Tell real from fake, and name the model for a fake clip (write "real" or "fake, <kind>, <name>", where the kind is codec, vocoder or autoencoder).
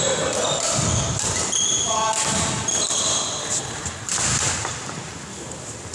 real